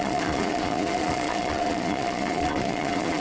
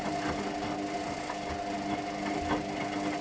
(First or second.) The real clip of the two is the second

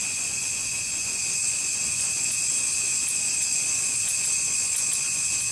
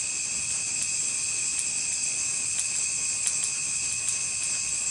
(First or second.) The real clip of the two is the second